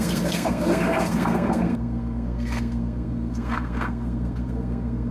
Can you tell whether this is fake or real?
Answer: fake